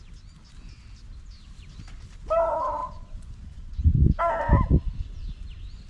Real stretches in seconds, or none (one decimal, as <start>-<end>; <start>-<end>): 0.0-2.8; 4.2-5.9